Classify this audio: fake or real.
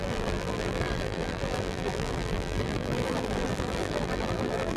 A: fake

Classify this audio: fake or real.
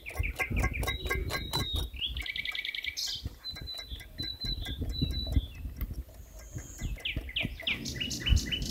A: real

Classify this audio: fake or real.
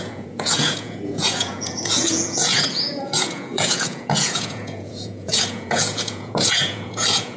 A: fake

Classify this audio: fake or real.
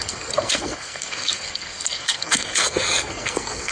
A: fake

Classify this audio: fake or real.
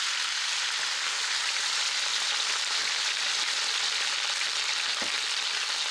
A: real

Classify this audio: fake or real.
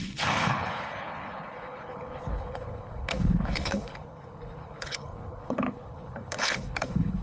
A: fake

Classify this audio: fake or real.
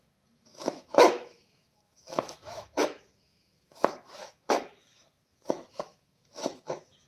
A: fake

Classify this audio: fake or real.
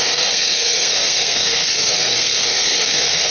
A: fake